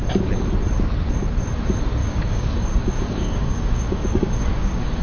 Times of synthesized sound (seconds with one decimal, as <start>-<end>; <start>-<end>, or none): 2.0-5.0